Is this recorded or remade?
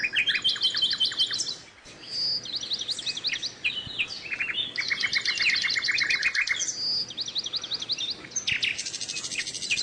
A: recorded